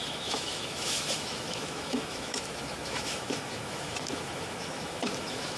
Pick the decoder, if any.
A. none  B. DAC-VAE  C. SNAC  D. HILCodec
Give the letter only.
B